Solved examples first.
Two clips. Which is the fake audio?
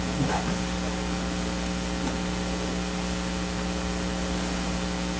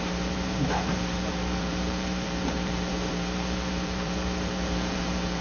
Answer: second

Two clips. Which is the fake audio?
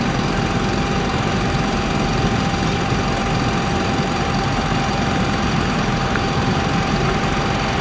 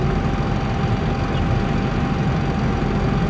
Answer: first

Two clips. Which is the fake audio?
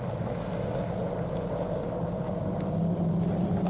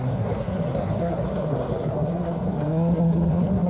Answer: second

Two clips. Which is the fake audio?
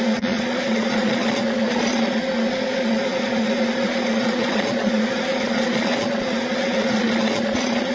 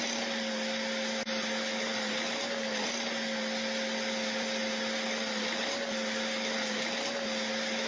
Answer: first